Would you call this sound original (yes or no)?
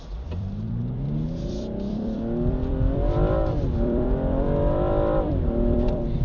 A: no